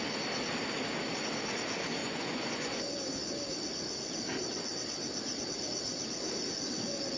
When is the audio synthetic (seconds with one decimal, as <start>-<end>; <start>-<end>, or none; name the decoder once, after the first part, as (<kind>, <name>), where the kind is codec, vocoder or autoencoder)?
2.0-2.8 (vocoder, Vocos)